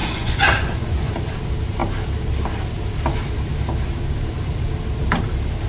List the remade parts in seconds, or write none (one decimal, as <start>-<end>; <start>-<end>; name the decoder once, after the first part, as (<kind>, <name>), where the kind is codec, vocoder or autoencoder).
0.0-1.1 (vocoder, Vocos)